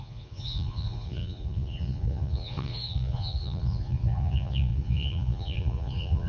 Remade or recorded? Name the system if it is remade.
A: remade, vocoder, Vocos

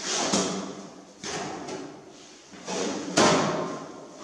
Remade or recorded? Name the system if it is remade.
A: remade, vocoder, Vocos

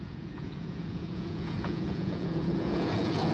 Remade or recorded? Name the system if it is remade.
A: remade, vocoder, Vocos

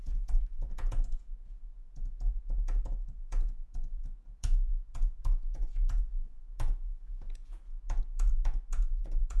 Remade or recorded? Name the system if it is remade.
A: remade, vocoder, Vocos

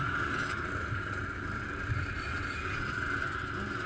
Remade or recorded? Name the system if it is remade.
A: recorded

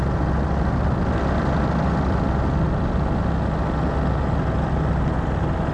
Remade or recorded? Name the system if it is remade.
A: recorded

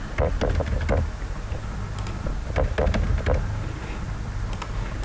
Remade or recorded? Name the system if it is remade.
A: recorded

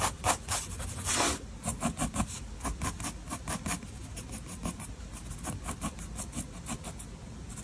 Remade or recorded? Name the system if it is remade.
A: recorded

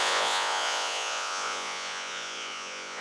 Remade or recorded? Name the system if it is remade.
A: remade, vocoder, Vocos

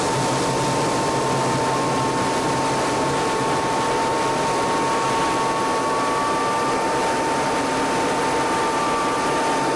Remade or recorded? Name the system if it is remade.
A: recorded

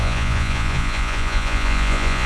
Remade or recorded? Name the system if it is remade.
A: remade, vocoder, Vocos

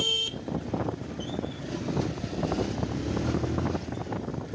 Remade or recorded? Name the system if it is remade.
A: recorded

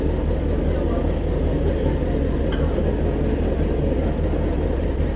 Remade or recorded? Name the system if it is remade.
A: recorded